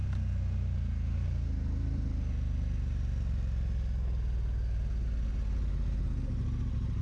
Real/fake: real